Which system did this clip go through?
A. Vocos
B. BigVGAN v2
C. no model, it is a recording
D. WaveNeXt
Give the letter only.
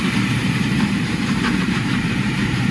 B